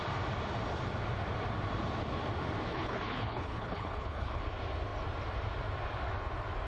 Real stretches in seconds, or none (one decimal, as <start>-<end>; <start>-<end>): 0.0-2.7; 4.4-6.7